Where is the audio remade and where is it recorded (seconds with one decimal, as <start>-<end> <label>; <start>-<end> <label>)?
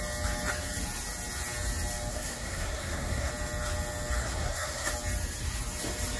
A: 0.0-2.1 recorded; 2.1-3.3 remade; 3.3-4.2 recorded; 4.2-4.9 remade; 4.9-6.2 recorded